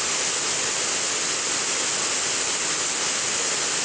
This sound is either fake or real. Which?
real